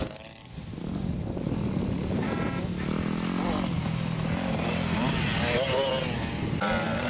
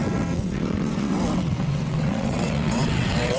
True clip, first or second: first